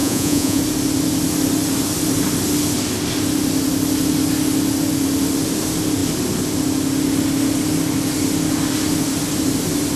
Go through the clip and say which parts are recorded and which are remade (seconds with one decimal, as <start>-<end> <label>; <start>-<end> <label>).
0.0-0.6 remade; 0.6-10.0 recorded

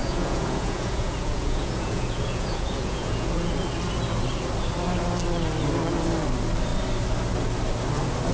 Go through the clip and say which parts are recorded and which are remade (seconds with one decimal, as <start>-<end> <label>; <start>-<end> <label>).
0.0-3.5 remade; 3.5-8.3 recorded

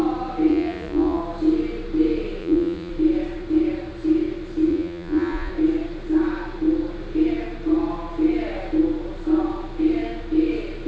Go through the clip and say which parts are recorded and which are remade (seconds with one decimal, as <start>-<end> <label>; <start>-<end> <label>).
0.0-0.5 recorded; 0.5-1.2 remade; 1.2-2.4 recorded; 2.4-2.9 remade; 2.9-4.7 recorded; 4.7-5.5 remade; 5.5-10.9 recorded

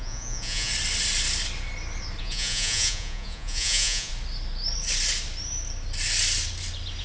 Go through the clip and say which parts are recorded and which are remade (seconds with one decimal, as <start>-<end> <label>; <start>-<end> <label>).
0.0-0.7 remade; 0.7-2.2 recorded; 2.2-4.1 remade; 4.1-7.0 recorded